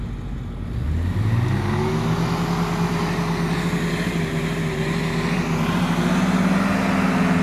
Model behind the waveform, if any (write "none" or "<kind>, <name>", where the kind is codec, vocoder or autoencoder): none